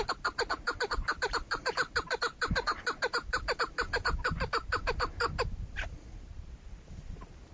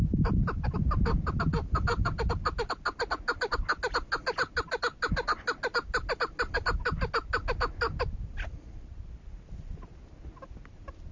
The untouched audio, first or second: second